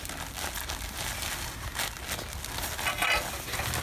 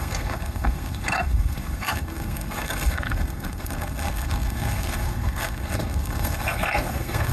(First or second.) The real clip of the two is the first